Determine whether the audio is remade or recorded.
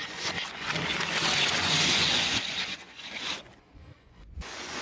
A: remade